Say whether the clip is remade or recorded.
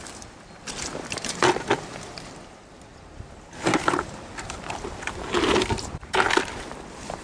recorded